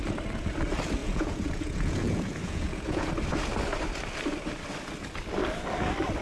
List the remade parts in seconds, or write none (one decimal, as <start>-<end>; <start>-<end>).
1.0-3.1